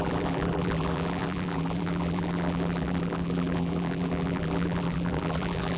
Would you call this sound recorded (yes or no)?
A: no